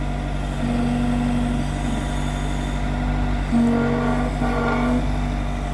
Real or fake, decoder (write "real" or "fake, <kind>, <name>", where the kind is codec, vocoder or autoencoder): real